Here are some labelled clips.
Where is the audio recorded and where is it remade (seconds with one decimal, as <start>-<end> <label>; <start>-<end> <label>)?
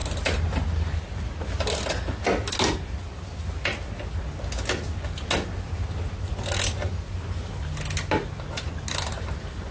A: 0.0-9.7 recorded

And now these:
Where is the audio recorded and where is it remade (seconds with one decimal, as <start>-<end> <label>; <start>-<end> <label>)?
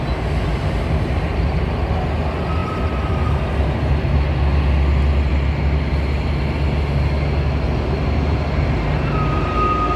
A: 0.0-10.0 recorded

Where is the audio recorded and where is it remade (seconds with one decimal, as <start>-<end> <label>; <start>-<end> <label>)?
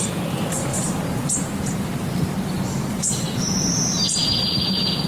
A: 0.0-5.1 remade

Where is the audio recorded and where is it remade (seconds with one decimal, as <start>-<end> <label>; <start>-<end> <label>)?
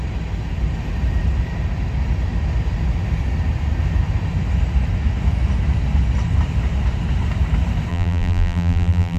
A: 0.0-7.9 recorded; 7.9-9.2 remade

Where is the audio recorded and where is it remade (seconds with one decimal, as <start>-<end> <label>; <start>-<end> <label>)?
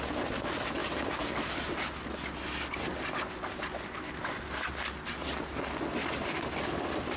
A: 0.0-0.8 recorded; 0.8-1.8 remade; 1.8-7.2 recorded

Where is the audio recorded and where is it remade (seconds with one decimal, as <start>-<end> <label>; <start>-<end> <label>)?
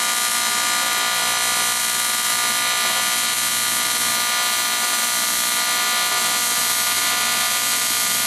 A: 0.0-8.3 recorded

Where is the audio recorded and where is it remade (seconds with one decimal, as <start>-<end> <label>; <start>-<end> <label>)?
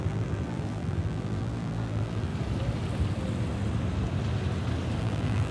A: 0.0-2.3 remade; 2.3-5.0 recorded; 5.0-5.5 remade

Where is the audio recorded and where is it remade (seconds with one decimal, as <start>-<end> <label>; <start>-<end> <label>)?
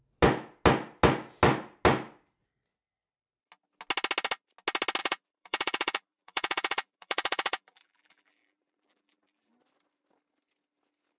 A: 0.0-5.0 recorded; 5.0-9.6 remade; 9.6-11.2 recorded